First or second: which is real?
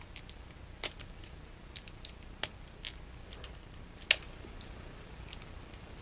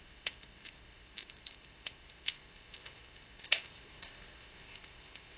first